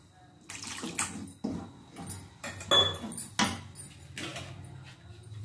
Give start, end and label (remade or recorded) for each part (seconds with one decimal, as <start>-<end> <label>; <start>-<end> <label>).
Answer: 0.0-5.4 recorded